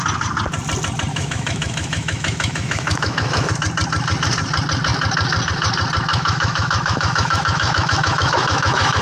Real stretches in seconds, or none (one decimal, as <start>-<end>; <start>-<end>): 0.0-1.1; 3.5-6.1